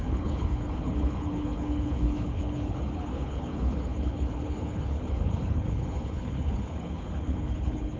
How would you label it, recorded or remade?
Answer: remade